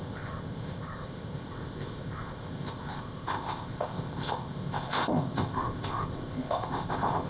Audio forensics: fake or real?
fake